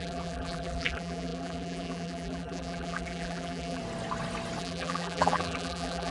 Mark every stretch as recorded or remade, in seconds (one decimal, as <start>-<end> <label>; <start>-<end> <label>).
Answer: 0.0-3.8 remade; 3.8-4.6 recorded; 4.6-6.1 remade